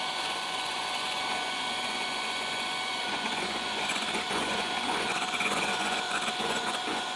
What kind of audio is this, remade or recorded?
remade